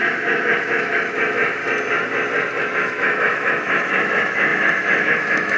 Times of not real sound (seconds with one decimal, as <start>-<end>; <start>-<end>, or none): 0.0-1.6; 2.6-5.6